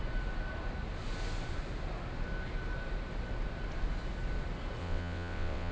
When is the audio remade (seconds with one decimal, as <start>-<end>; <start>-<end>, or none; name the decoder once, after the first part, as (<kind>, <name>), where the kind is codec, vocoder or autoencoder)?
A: 4.8-5.7 (vocoder, WaveNeXt)